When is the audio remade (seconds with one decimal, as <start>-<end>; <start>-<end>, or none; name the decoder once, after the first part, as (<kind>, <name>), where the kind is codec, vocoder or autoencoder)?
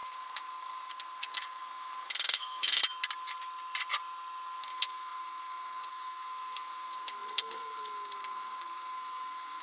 0.0-2.8 (codec, SNAC); 4.6-9.6